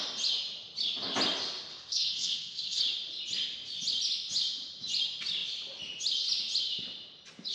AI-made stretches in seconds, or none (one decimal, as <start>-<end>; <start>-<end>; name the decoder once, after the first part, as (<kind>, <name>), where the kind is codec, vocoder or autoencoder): 1.7-2.8 (codec, SNAC)